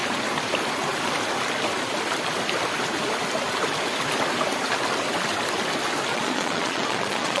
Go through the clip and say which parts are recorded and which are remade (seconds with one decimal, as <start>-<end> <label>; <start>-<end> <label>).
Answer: 0.0-6.1 recorded; 6.1-7.4 remade